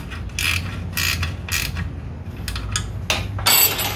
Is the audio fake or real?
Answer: real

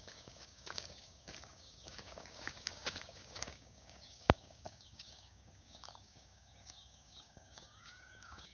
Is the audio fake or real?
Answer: fake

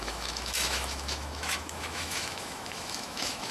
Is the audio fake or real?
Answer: fake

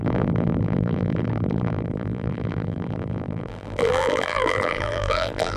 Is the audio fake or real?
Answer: fake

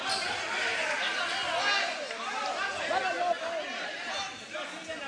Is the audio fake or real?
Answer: real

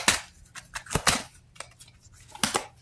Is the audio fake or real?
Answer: real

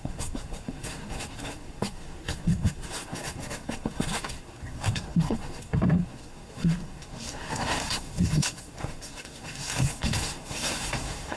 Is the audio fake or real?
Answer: fake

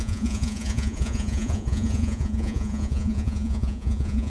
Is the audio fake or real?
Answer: fake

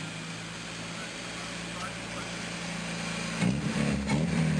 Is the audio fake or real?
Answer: real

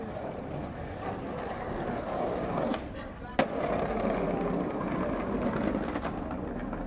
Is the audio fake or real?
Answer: real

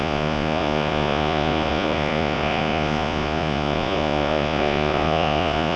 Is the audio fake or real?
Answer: fake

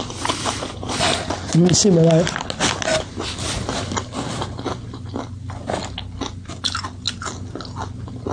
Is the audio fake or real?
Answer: real